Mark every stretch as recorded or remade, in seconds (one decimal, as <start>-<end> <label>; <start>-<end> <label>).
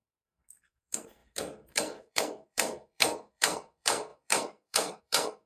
0.0-5.5 remade